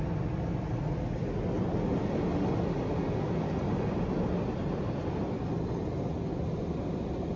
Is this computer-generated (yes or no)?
no